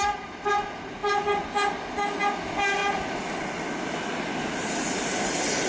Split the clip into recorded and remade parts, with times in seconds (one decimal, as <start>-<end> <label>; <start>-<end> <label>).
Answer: 0.0-5.7 recorded